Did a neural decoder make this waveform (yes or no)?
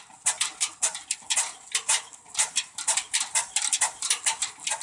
no